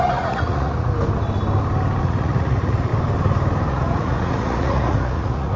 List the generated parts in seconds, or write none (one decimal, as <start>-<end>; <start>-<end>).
0.0-0.9; 2.0-2.9; 3.7-5.6